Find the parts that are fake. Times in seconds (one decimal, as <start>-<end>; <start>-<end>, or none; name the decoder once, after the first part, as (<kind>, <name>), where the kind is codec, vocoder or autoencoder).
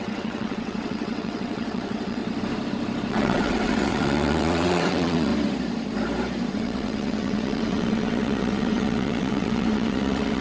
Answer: 0.0-2.2 (vocoder, WaveNeXt); 3.1-5.3; 6.5-10.4